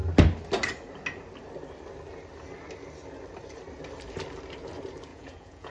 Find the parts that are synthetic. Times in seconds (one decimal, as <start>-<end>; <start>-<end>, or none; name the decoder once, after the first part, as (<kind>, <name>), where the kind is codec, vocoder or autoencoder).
5.1-5.7 (vocoder, Vocos)